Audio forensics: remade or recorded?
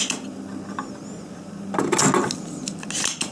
recorded